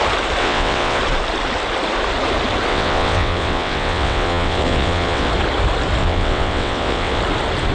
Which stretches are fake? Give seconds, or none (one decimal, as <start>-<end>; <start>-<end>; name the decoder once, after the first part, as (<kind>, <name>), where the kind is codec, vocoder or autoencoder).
0.4-1.0 (vocoder, WaveNeXt); 2.7-5.3; 6.0-7.2